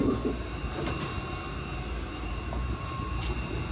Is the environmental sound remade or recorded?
remade